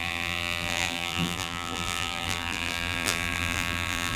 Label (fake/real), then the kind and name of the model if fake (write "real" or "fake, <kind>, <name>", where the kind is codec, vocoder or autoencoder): fake, vocoder, BigVGAN v2